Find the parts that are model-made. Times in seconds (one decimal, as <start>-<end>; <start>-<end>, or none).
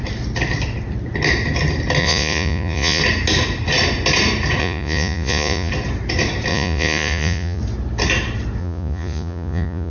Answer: 2.0-3.0; 4.6-5.7; 6.5-7.6; 8.6-9.9